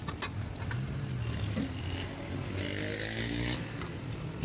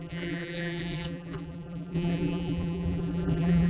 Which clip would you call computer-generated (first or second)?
second